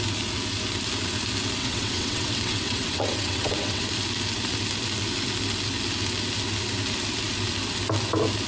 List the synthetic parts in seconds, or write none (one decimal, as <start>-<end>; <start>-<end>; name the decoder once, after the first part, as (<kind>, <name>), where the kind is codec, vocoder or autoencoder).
1.6-3.8 (vocoder, WaveNeXt)